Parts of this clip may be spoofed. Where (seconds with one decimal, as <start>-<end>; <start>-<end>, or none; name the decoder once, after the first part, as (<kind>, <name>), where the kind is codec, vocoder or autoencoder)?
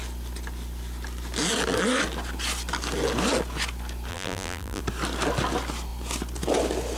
4.1-4.8 (vocoder, BigVGAN v2)